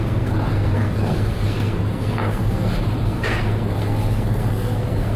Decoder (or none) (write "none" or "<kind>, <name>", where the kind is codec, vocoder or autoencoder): codec, SNAC